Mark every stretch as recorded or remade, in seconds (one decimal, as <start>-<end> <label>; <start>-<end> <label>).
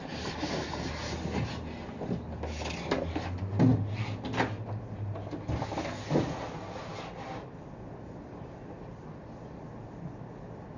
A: 0.0-10.8 recorded